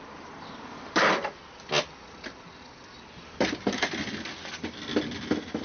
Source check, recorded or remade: recorded